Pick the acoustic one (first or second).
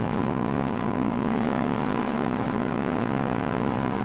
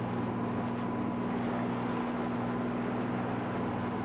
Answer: second